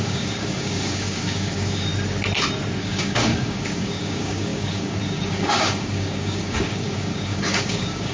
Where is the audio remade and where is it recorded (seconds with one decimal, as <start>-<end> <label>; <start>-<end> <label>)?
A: 0.0-1.9 remade; 1.9-2.8 recorded; 2.8-8.1 remade